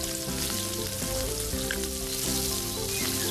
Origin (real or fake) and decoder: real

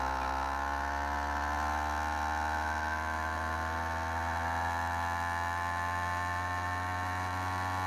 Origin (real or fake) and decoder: real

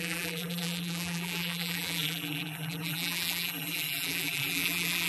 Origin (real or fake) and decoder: fake, vocoder, BigVGAN v2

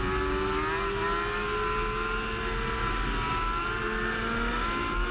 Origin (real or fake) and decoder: real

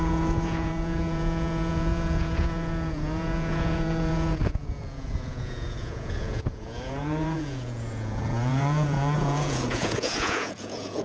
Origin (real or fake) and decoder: fake, vocoder, Vocos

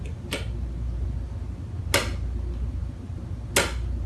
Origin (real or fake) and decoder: real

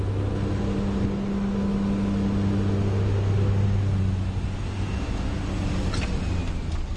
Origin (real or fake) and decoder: real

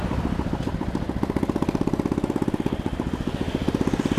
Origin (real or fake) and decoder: fake, vocoder, BigVGAN v2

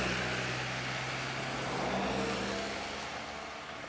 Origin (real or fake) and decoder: real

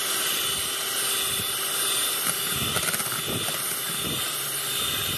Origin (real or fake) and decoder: real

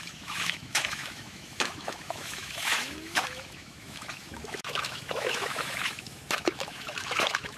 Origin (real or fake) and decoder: fake, autoencoder, DAC-VAE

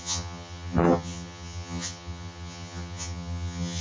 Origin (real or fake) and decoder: fake, vocoder, HiFi-GAN